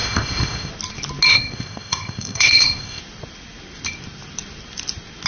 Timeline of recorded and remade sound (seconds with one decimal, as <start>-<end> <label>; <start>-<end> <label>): 0.0-0.7 remade; 0.7-1.3 recorded; 1.3-3.0 remade; 3.0-5.3 recorded